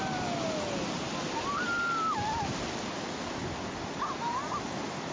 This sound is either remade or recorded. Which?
recorded